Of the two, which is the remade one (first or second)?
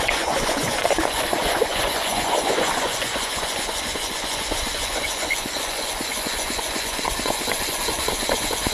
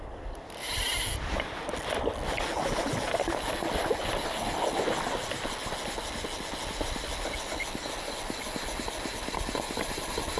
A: first